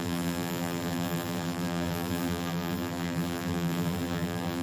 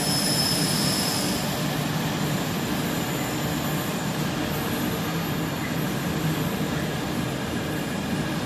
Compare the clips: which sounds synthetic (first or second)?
first